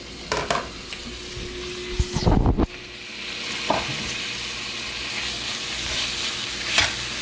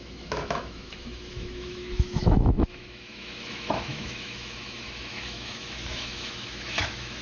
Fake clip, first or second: second